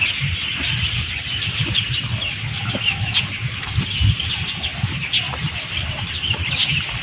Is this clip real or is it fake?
real